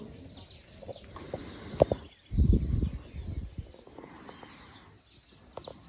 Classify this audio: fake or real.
real